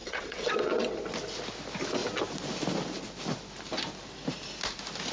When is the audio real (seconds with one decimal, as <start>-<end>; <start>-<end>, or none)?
1.0-5.1